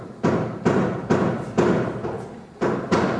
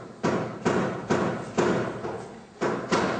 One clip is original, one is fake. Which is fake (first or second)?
first